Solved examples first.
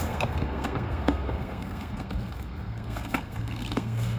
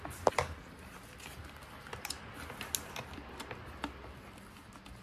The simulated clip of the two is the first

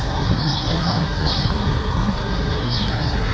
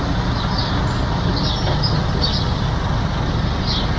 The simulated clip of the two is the first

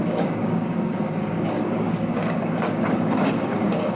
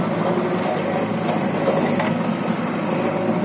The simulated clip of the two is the first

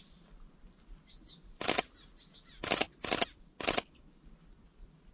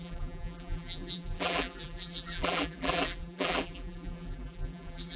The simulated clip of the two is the second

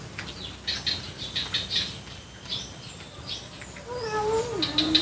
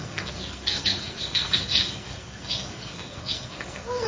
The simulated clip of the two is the second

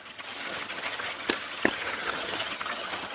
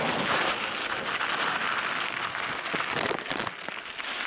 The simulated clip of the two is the first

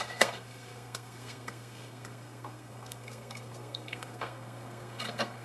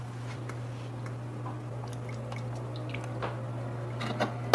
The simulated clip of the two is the first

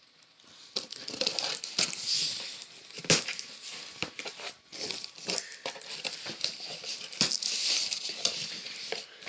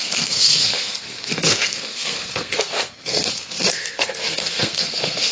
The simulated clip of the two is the second